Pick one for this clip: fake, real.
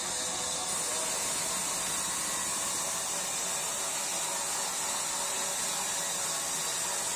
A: real